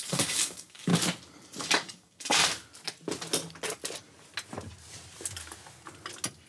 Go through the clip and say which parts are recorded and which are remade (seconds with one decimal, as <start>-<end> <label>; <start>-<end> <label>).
0.0-0.9 remade; 0.9-1.6 recorded; 1.6-2.4 remade; 2.4-6.5 recorded